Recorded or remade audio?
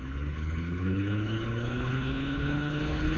remade